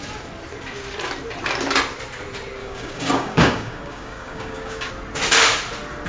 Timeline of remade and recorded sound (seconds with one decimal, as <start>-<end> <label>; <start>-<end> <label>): 0.0-2.6 recorded; 2.6-4.9 remade; 4.9-6.1 recorded